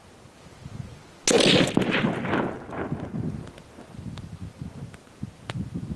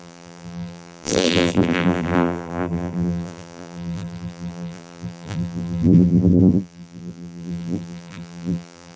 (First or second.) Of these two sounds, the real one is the first